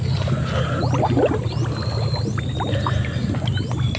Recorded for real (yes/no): yes